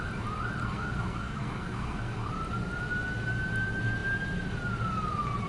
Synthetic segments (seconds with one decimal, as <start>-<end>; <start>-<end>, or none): 0.6-2.3

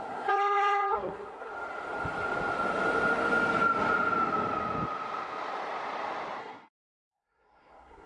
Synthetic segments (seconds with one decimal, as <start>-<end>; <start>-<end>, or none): 0.0-1.5; 6.4-8.1